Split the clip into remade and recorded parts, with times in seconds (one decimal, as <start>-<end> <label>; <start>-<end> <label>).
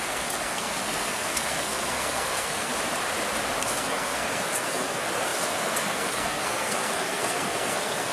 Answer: 0.0-2.7 remade; 2.7-3.6 recorded; 3.6-8.1 remade